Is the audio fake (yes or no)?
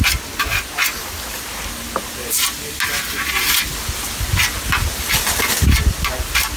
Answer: no